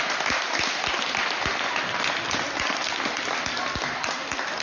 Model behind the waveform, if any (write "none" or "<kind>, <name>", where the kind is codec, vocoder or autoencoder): none